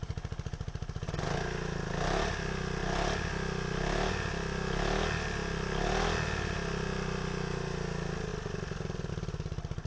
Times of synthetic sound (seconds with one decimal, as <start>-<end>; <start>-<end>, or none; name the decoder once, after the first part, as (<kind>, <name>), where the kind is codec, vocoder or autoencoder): none